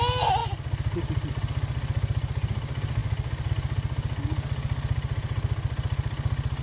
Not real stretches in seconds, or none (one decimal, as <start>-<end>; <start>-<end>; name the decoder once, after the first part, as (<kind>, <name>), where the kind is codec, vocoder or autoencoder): none